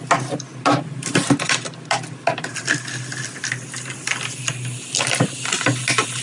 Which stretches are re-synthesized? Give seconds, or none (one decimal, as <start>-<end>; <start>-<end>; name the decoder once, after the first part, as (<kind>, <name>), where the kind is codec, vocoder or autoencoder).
none